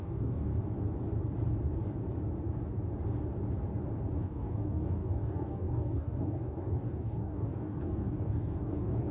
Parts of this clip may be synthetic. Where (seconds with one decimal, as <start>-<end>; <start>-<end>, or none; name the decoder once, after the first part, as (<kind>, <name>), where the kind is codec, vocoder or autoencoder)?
0.0-0.5 (codec, DAC); 4.2-9.1